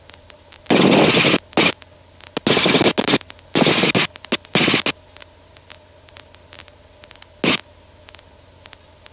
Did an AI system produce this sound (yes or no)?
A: no